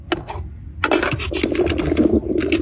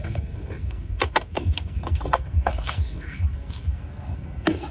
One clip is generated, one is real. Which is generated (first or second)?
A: second